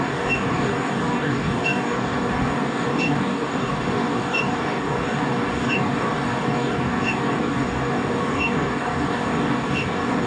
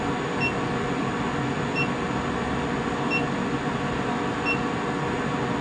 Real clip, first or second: second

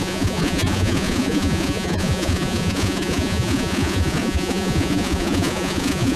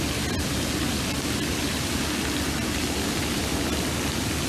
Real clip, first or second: second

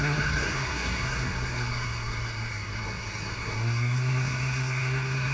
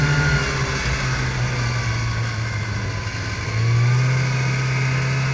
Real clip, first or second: second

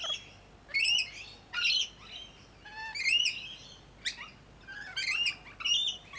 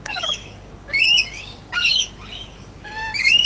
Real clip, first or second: first